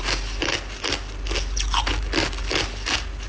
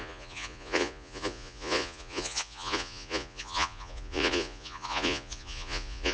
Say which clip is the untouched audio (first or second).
first